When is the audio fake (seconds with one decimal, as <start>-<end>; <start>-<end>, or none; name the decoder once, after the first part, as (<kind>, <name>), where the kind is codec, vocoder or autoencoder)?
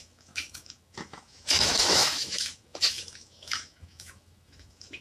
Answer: 0.0-5.0 (autoencoder, DAC-VAE)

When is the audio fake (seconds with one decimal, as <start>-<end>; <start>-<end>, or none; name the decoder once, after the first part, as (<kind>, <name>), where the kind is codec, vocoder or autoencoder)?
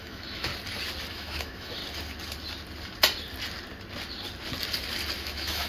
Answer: 0.0-0.5 (autoencoder, DAC-VAE); 1.1-1.8; 5.2-5.7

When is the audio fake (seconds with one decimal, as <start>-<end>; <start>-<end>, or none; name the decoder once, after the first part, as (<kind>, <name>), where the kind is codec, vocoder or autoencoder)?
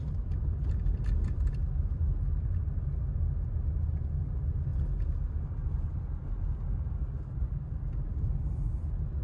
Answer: none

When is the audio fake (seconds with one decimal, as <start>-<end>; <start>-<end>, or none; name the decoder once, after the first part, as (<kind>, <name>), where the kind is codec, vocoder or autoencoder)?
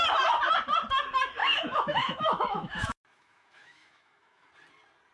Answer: 1.4-4.5 (autoencoder, DAC-VAE)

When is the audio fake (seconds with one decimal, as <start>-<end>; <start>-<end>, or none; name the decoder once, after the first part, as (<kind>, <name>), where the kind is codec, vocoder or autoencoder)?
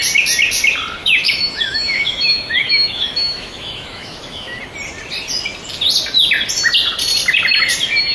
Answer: 1.0-4.6 (autoencoder, DAC-VAE)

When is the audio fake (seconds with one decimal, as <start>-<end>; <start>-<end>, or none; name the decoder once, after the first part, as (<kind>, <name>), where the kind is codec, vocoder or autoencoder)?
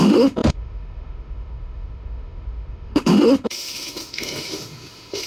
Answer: 0.0-5.3 (autoencoder, DAC-VAE)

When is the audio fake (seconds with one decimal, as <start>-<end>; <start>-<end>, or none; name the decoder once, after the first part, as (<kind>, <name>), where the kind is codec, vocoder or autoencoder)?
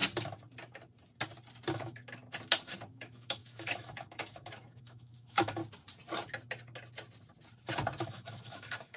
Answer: 1.7-2.2 (autoencoder, DAC-VAE); 2.9-5.6; 8.0-9.0